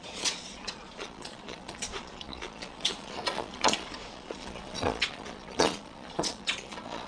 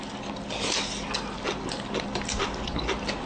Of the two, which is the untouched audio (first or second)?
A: second